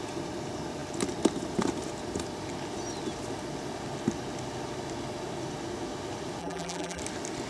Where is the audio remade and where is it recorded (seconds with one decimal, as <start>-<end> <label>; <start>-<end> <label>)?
0.0-6.4 recorded; 6.4-7.0 remade; 7.0-7.5 recorded